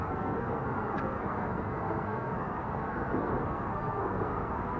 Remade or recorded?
remade